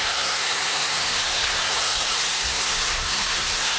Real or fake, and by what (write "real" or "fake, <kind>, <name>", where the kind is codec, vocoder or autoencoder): fake, codec, SNAC